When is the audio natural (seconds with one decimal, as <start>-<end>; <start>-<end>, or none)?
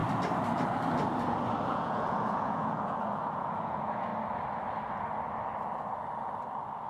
0.0-1.7; 4.1-6.9